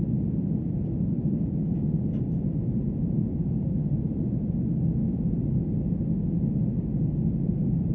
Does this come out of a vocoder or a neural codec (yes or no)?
no